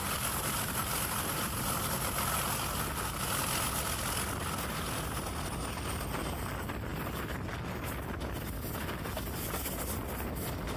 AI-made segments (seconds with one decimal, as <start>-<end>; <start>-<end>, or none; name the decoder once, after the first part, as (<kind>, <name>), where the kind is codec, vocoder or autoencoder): 6.9-7.5 (vocoder, BigVGAN v2)